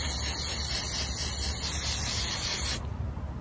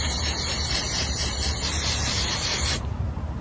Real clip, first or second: first